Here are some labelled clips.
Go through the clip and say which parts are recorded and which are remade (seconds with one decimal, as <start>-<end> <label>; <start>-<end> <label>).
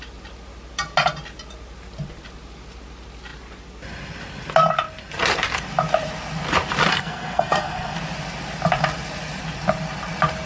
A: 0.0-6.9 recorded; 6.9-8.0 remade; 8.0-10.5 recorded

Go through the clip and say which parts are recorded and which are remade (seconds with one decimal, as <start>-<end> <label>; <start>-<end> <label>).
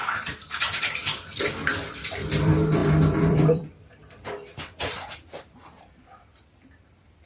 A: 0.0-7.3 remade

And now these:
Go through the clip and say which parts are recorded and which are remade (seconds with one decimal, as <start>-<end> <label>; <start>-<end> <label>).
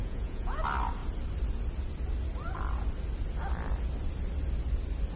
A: 0.0-0.6 remade; 0.6-5.2 recorded